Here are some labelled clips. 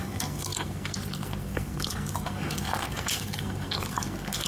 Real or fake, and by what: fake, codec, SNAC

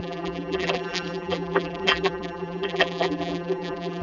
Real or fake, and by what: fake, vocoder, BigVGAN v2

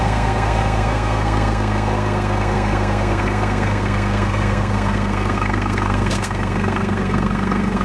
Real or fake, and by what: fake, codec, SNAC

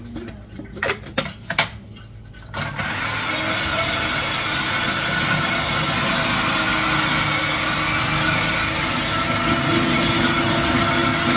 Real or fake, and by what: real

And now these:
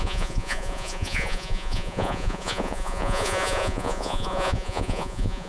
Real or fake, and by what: fake, vocoder, Vocos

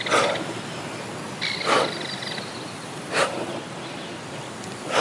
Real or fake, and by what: real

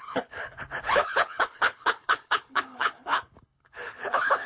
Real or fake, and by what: fake, codec, HILCodec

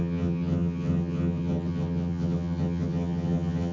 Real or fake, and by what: fake, vocoder, HiFi-GAN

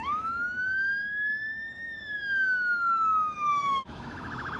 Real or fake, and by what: fake, autoencoder, DAC-VAE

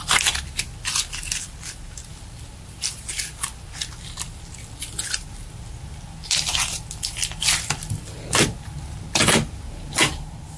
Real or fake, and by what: real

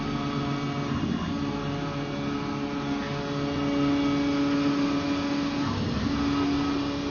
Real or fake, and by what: real